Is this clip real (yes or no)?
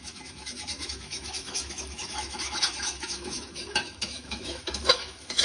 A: no